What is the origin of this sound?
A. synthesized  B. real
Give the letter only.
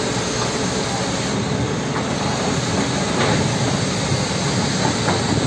B